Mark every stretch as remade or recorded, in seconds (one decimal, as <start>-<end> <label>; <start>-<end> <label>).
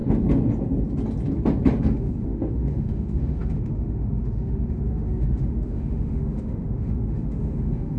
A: 0.0-1.8 recorded; 1.8-8.0 remade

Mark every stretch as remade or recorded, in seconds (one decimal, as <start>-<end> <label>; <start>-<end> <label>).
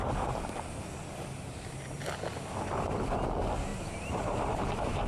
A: 0.0-3.7 recorded; 3.7-5.1 remade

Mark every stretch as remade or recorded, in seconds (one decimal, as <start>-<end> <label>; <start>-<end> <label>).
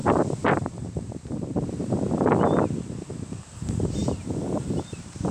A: 0.0-1.9 remade; 1.9-4.0 recorded; 4.0-5.3 remade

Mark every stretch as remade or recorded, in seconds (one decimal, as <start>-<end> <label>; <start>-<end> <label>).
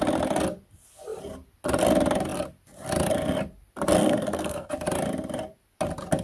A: 0.0-4.0 recorded; 4.0-4.7 remade; 4.7-6.2 recorded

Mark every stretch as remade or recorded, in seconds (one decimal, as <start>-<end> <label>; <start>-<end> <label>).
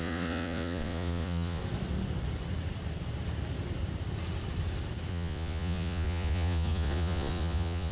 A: 0.0-1.6 remade; 1.6-5.1 recorded; 5.1-7.9 remade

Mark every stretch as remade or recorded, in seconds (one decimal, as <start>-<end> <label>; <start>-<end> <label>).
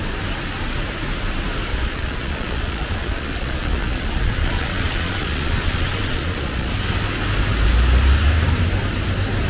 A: 0.0-1.7 recorded; 1.7-6.7 remade; 6.7-9.5 recorded